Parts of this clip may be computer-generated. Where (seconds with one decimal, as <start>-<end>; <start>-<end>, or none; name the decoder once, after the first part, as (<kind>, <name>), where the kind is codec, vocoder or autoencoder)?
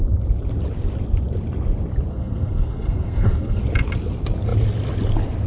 2.1-3.6 (codec, SNAC)